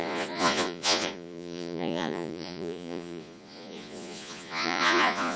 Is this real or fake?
fake